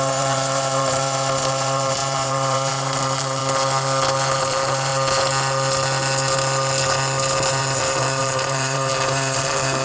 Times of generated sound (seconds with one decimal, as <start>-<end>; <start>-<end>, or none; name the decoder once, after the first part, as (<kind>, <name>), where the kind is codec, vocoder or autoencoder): 0.0-3.4 (vocoder, BigVGAN v2); 4.4-4.9; 7.6-9.8